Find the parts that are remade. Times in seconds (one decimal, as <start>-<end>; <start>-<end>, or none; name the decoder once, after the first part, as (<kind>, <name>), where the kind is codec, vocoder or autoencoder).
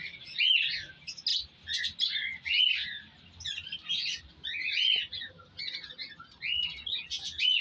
none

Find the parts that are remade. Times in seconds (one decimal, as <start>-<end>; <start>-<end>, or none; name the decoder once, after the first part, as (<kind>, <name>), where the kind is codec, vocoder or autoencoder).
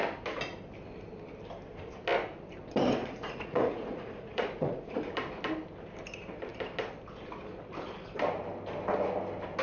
3.0-5.0 (vocoder, Vocos)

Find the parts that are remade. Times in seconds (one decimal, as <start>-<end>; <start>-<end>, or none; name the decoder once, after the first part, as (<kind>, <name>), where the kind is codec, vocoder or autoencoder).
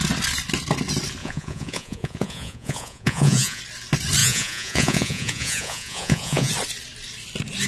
1.2-3.6 (vocoder, Vocos); 4.2-6.5